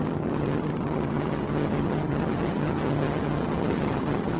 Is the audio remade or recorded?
remade